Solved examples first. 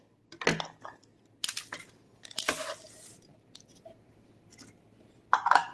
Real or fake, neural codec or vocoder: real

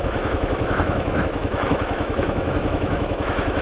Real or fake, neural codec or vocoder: fake, autoencoder, DAC-VAE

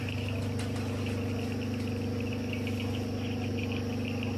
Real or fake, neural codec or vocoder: real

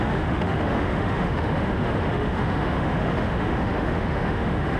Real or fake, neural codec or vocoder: fake, autoencoder, DAC-VAE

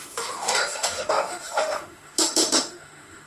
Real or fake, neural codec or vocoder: fake, autoencoder, DAC-VAE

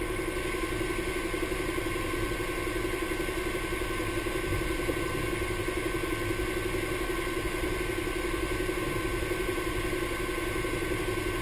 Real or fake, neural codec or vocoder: real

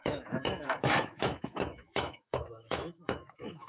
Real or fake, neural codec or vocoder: fake, autoencoder, DAC-VAE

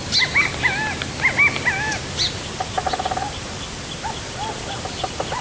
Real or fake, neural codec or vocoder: real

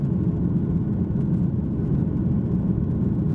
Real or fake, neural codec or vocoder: real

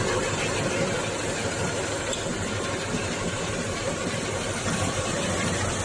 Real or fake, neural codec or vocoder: real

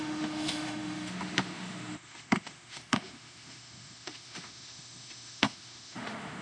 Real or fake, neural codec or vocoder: fake, autoencoder, DAC-VAE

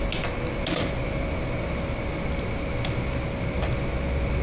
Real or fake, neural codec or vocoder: real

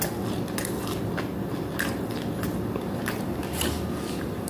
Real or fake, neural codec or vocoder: real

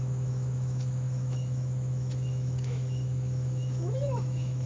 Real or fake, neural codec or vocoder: fake, autoencoder, DAC-VAE